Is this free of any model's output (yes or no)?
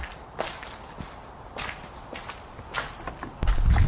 yes